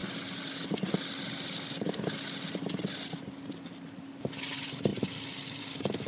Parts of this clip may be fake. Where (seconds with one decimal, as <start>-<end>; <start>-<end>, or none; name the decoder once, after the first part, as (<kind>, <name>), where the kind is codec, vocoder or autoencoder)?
none